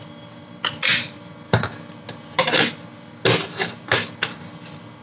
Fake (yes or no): no